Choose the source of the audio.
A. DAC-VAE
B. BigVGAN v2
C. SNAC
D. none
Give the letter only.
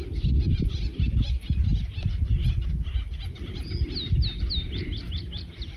D